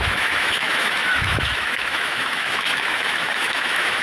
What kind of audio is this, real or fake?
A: fake